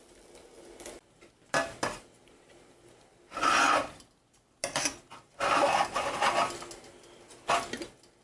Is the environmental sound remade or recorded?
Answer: recorded